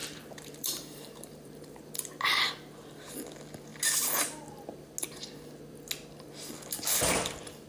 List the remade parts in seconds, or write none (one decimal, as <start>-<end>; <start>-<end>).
0.0-1.9